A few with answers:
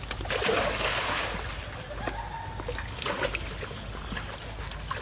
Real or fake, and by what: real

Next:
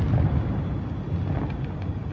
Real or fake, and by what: real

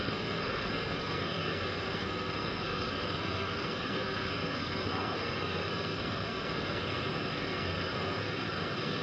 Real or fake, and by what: fake, codec, SNAC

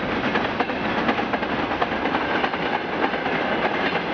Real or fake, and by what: real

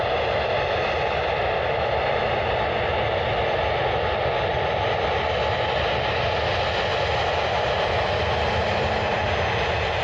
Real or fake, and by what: real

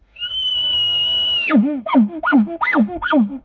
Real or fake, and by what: fake, autoencoder, DAC-VAE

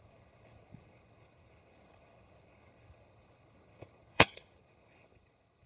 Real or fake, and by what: fake, codec, HILCodec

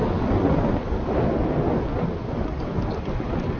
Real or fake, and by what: real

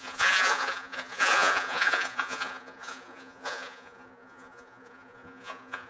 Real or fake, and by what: fake, vocoder, Vocos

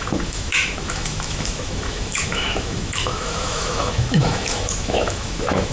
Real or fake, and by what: fake, autoencoder, DAC-VAE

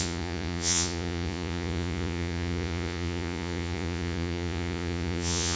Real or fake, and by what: fake, vocoder, Vocos